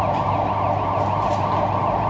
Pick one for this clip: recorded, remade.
recorded